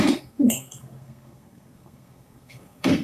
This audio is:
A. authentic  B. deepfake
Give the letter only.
B